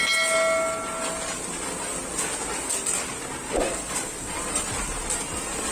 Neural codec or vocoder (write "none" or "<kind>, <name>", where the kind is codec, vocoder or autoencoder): none